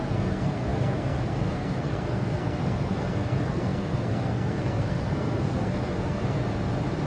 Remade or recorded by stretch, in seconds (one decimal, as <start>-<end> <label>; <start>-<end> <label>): 0.0-6.4 remade; 6.4-7.1 recorded